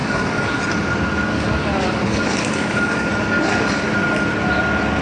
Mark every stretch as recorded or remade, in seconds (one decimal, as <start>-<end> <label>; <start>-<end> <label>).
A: 0.0-0.6 remade; 0.6-1.3 recorded; 1.3-3.1 remade; 3.1-5.0 recorded